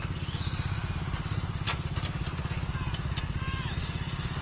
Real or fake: real